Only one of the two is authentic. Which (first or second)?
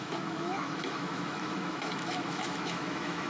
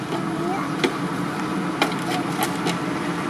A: second